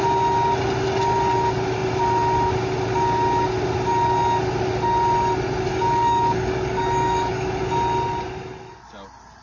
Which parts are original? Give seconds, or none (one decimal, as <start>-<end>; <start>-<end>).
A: 0.0-5.7; 7.6-9.4